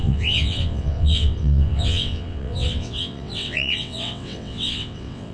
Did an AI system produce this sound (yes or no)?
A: yes